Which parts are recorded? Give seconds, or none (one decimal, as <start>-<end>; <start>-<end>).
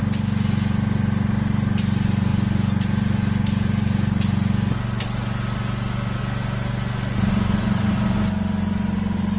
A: 0.0-9.4